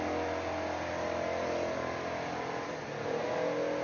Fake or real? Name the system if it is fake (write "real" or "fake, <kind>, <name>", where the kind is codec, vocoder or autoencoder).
real